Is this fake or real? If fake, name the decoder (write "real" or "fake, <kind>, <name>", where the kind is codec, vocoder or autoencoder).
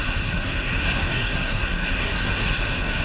fake, codec, SNAC